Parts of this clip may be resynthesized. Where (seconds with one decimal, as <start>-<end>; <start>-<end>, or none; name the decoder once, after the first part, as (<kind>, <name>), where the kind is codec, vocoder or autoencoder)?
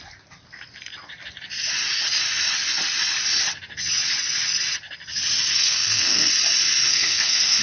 5.5-6.3 (codec, SNAC); 6.9-7.6